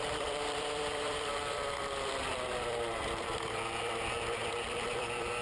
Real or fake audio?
fake